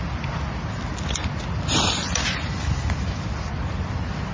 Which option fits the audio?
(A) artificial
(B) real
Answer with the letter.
B